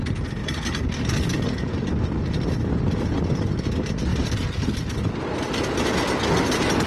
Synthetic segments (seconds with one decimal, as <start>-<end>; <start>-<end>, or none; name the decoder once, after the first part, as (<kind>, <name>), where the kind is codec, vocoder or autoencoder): none